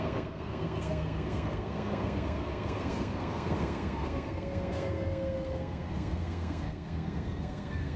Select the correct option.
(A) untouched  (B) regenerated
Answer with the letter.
B